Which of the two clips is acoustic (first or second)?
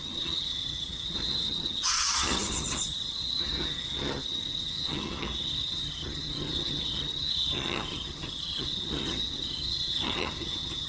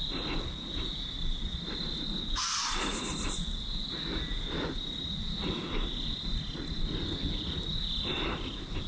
second